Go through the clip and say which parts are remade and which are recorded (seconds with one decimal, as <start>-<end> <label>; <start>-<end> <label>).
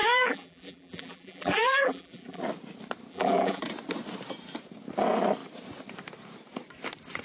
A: 0.0-2.4 remade; 2.4-3.1 recorded; 3.1-3.6 remade; 3.6-7.2 recorded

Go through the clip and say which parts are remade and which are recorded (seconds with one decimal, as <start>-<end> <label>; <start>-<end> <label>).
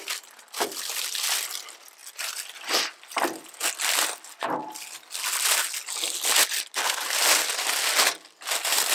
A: 0.0-8.9 recorded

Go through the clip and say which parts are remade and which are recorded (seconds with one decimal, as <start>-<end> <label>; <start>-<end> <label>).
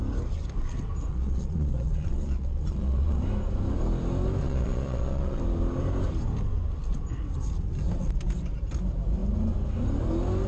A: 0.0-1.1 recorded; 1.1-3.2 remade; 3.2-4.4 recorded; 4.4-5.4 remade; 5.4-10.5 recorded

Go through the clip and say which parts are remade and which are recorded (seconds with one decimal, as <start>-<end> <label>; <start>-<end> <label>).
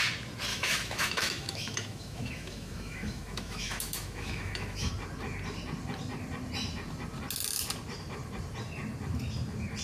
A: 0.0-0.5 recorded; 0.5-4.9 remade; 4.9-9.8 recorded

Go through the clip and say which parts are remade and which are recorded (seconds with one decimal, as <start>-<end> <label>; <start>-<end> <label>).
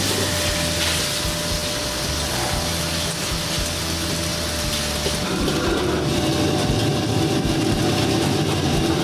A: 0.0-9.0 recorded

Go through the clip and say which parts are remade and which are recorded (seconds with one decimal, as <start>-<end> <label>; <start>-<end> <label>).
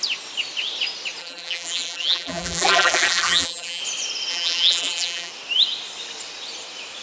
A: 0.0-1.2 recorded; 1.2-3.8 remade; 3.8-4.3 recorded; 4.3-5.3 remade; 5.3-7.0 recorded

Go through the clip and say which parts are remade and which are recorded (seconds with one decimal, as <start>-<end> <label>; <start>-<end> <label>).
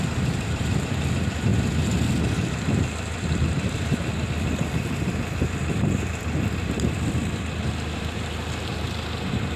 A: 0.0-9.6 remade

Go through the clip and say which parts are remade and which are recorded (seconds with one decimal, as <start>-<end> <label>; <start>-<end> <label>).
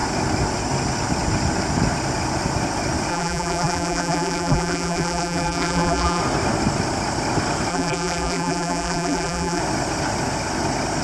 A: 0.0-3.1 recorded; 3.1-6.2 remade; 6.2-7.7 recorded; 7.7-9.6 remade; 9.6-11.0 recorded